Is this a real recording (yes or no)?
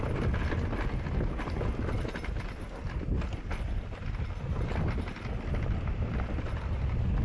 yes